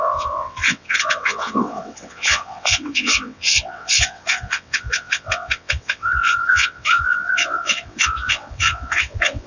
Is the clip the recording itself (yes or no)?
no